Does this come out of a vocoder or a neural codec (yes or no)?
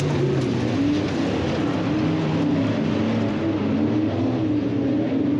no